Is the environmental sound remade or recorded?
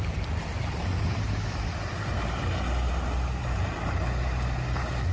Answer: recorded